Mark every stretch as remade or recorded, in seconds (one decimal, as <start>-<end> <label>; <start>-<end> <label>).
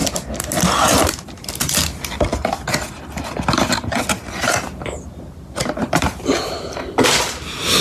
0.0-5.8 recorded; 5.8-6.8 remade; 6.8-7.8 recorded